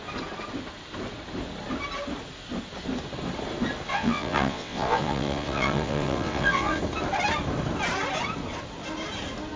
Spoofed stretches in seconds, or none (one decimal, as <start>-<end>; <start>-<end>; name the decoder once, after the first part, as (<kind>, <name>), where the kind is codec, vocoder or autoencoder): 3.9-6.8 (vocoder, WaveNeXt)